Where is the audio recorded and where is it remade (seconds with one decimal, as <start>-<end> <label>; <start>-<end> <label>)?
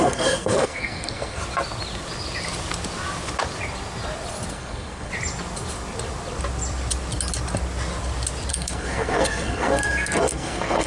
0.0-1.4 remade; 1.4-4.5 recorded; 4.5-5.1 remade; 5.1-8.5 recorded; 8.5-10.9 remade